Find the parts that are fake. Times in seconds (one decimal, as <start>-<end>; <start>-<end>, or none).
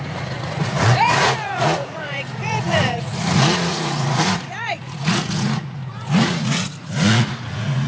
0.0-7.9